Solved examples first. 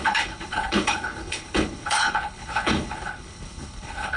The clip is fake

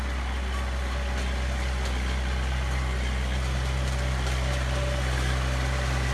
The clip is real